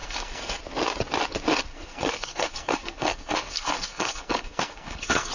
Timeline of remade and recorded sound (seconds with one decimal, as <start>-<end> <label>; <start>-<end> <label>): 0.0-0.6 remade; 0.6-1.7 recorded; 1.7-5.3 remade